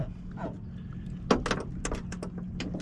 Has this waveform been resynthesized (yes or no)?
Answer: no